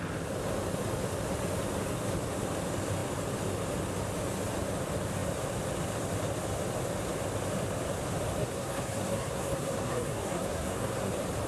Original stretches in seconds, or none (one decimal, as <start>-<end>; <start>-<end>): 0.0-8.4; 11.1-11.5